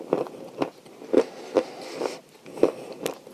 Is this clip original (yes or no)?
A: yes